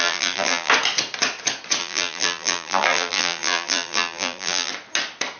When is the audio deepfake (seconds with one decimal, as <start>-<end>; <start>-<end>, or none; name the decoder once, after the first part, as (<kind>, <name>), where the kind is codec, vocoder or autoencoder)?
0.0-0.7 (vocoder, BigVGAN v2); 1.8-4.7